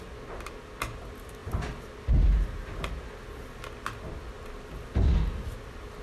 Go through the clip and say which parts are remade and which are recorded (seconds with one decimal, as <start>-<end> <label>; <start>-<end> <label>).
0.0-6.0 recorded